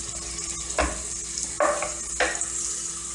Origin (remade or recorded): recorded